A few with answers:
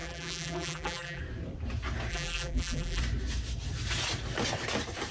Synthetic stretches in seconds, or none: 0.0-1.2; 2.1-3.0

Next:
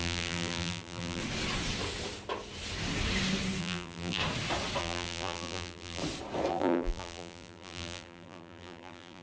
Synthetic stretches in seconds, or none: 0.0-1.2; 3.6-4.2; 4.8-6.0; 6.5-9.2

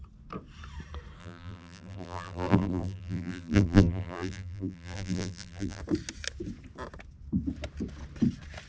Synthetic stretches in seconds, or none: 1.2-5.8

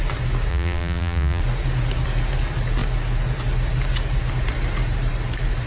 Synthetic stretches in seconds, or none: 0.5-1.4

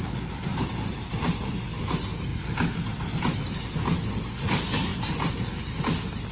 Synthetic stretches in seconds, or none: 0.5-1.1

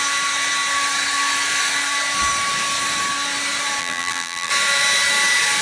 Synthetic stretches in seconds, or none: 3.8-4.5

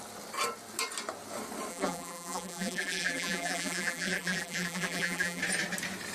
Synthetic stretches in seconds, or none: 1.7-5.4

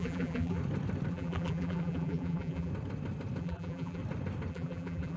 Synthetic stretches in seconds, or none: 0.0-0.6; 1.1-2.7; 3.4-4.0; 4.5-5.2